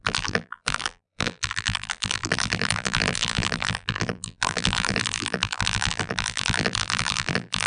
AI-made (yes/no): yes